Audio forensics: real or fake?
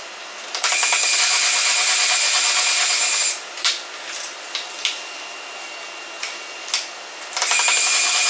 real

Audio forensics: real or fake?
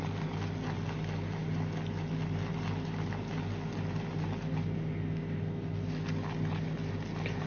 real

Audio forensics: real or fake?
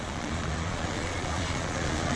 fake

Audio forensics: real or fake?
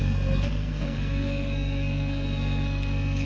fake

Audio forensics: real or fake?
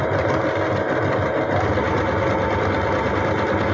real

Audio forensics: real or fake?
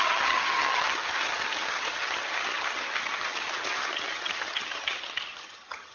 fake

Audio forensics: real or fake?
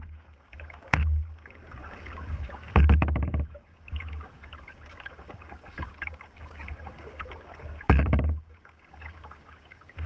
fake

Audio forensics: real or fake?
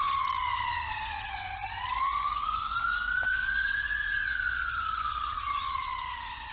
fake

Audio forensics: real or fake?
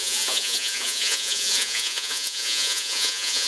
fake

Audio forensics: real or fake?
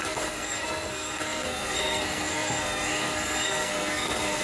fake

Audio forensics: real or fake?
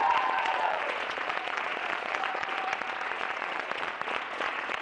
fake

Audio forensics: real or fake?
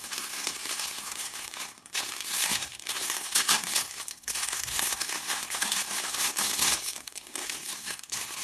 fake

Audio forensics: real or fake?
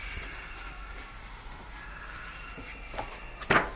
real